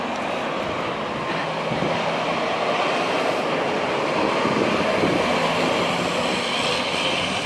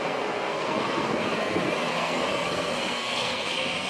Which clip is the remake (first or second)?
second